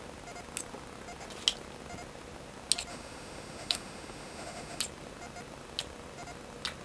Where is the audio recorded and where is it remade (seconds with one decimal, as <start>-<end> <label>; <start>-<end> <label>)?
0.0-2.9 recorded; 2.9-4.8 remade; 4.8-6.8 recorded

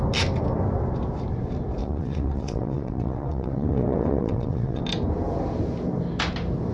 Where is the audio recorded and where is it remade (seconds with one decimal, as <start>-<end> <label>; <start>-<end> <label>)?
0.0-1.8 recorded; 1.8-4.8 remade; 4.8-6.7 recorded

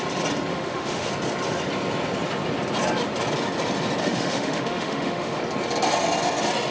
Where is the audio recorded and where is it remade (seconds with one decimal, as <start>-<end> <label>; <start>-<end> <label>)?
0.0-0.5 recorded; 0.5-1.1 remade; 1.1-4.0 recorded; 4.0-5.4 remade; 5.4-6.7 recorded

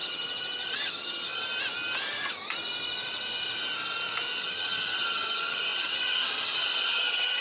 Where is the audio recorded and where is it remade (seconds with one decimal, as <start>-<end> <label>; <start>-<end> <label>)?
0.0-1.4 remade; 1.4-4.4 recorded; 4.4-7.4 remade